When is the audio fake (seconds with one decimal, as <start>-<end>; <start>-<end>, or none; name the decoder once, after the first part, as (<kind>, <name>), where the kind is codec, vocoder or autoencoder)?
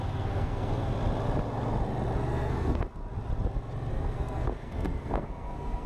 0.0-0.9 (codec, SNAC); 2.3-3.0; 3.9-5.9